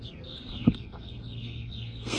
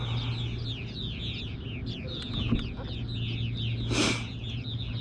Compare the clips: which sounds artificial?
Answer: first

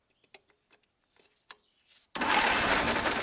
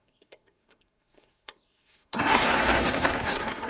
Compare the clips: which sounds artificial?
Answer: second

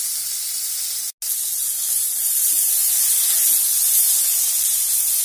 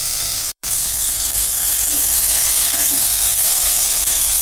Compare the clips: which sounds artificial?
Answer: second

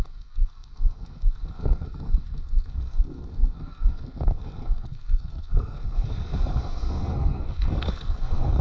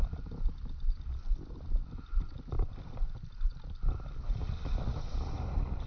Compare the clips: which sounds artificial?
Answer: first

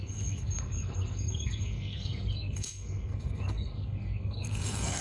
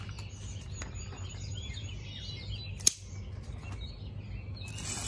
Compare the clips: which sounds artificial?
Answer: first